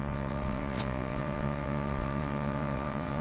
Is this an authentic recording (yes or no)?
no